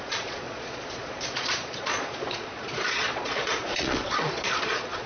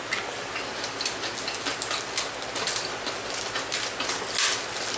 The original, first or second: second